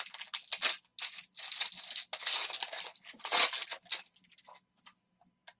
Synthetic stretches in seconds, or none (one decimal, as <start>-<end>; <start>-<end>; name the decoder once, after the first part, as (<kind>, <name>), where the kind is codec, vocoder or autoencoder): none